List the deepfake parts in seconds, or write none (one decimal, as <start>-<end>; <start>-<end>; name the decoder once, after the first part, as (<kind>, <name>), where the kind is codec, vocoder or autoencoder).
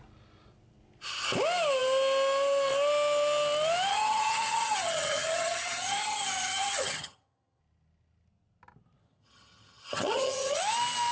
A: 3.9-7.6 (vocoder, HiFi-GAN); 9.0-10.6